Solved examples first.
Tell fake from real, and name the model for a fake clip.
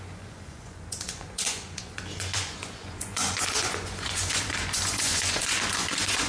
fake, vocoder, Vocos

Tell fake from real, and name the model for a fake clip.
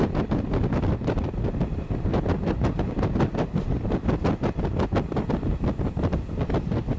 real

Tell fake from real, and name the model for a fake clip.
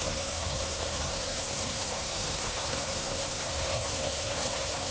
fake, codec, SNAC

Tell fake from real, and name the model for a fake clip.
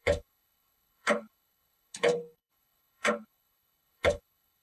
fake, codec, HILCodec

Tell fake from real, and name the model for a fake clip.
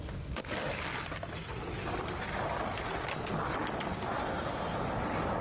real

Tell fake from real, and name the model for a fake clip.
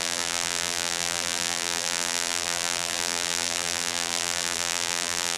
fake, vocoder, BigVGAN v2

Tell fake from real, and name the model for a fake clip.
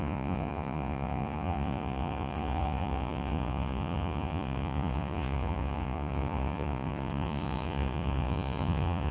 fake, vocoder, Vocos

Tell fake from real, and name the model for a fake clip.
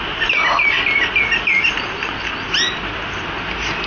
real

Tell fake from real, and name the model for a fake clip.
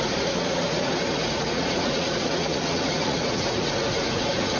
fake, vocoder, Vocos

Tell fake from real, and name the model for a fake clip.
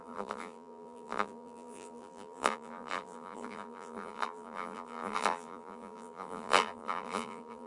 fake, vocoder, BigVGAN v2